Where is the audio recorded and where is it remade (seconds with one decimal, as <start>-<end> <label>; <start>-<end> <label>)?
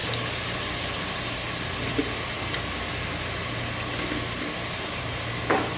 0.0-5.8 recorded